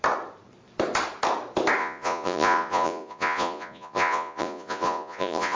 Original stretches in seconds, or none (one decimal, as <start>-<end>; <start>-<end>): 0.0-1.8